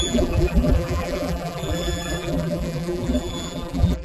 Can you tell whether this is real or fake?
fake